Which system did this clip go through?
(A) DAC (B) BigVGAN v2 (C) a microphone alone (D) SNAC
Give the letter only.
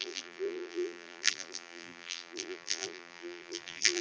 B